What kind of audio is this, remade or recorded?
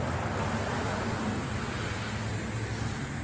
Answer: recorded